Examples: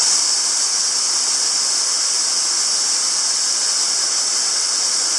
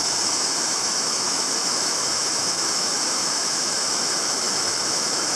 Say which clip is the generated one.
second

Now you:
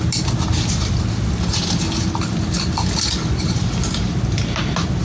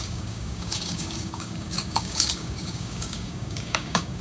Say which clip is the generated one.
second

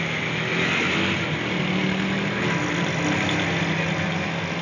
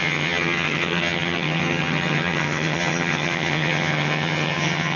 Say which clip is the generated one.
second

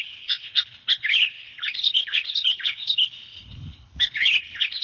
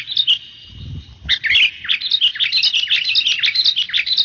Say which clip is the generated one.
first